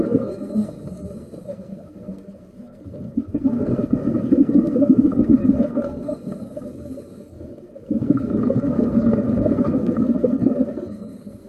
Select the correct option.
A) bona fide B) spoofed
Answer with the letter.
B